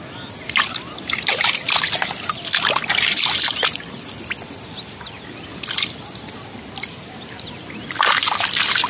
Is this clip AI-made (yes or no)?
no